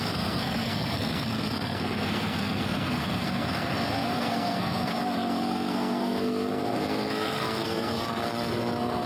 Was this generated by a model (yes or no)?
yes